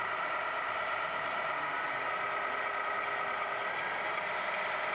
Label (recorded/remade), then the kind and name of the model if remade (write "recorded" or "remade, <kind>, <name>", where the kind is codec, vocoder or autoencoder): recorded